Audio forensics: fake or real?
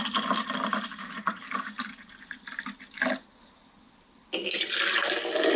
real